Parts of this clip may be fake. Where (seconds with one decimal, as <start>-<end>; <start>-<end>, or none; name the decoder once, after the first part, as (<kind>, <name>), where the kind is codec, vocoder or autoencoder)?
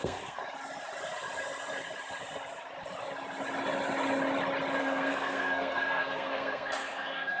0.0-0.4 (codec, SNAC); 4.8-7.4